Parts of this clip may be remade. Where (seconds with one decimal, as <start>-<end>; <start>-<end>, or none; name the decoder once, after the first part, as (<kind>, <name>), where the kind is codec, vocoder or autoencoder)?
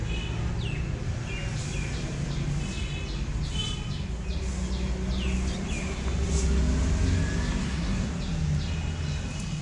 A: 7.6-8.1 (codec, SNAC)